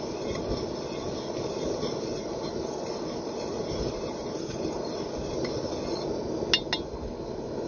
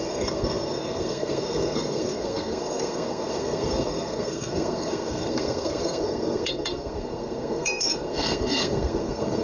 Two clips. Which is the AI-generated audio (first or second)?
second